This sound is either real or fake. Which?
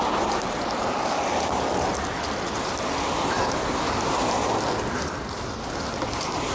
real